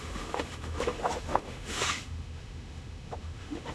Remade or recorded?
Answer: remade